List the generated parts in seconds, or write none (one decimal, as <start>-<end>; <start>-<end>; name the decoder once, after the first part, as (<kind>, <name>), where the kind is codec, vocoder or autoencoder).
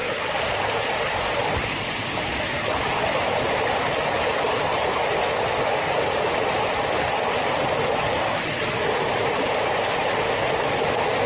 none